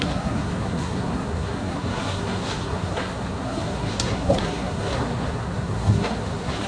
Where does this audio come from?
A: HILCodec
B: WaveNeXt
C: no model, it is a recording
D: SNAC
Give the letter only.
D